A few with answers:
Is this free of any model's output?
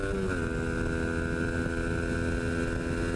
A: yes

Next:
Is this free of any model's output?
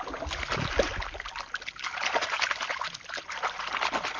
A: yes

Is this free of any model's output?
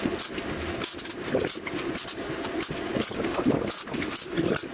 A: yes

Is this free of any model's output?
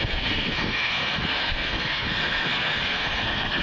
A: no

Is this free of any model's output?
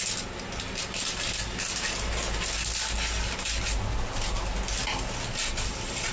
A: yes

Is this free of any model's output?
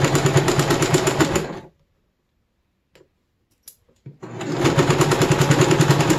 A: yes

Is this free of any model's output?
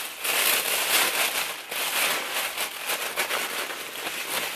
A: yes